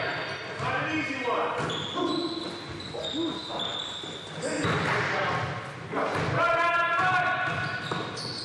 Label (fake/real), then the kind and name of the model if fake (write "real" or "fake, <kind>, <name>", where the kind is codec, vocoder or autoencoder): real